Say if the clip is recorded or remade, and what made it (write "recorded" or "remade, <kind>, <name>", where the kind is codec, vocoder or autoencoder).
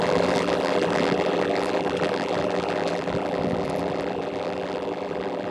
remade, vocoder, BigVGAN v2